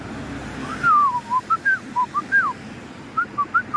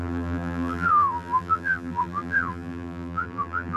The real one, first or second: first